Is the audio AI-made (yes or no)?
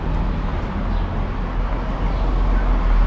no